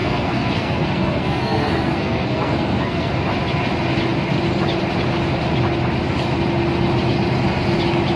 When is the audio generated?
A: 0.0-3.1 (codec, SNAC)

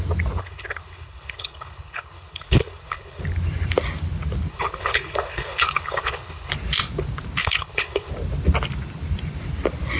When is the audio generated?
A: 0.4-3.2 (codec, HILCodec); 4.5-6.5; 7.4-8.1